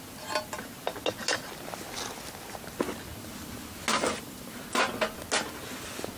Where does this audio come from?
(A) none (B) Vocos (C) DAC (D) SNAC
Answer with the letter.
A